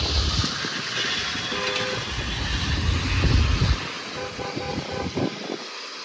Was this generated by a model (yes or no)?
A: no